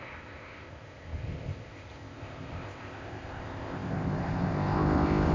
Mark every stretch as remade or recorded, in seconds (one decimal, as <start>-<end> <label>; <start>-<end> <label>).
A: 0.0-5.3 remade